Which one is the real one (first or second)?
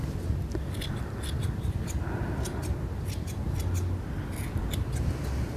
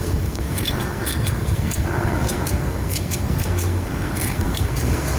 first